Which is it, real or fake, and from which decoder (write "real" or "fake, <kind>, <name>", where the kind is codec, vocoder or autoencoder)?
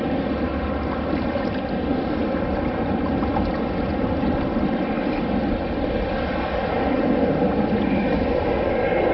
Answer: real